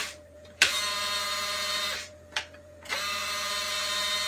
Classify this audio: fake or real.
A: fake